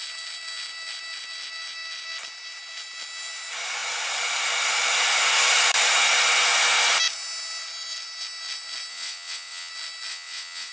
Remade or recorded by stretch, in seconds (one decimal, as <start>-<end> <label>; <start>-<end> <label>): 0.0-8.9 recorded; 8.9-9.7 remade; 9.7-10.1 recorded; 10.1-10.7 remade